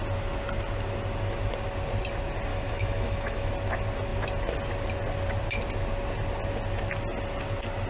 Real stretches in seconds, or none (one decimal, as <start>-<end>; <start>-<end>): 0.0-2.5; 3.5-7.9